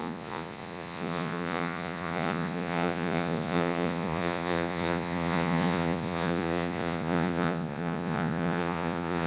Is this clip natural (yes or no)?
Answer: no